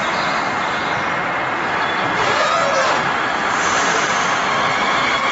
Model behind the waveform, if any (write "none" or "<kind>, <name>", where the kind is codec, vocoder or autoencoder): none